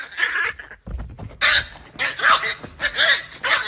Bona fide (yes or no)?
yes